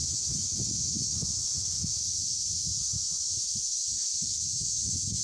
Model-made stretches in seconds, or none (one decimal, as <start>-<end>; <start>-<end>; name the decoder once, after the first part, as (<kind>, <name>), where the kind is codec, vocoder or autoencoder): 0.0-5.2 (autoencoder, DAC-VAE)